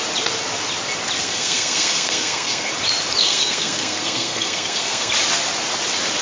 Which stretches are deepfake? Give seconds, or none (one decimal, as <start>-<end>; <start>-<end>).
1.2-2.7; 3.2-5.1